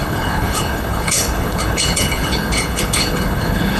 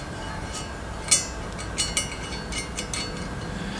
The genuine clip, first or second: second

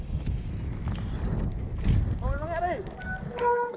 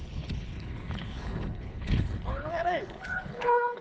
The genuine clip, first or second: first